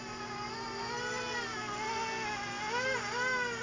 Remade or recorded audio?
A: recorded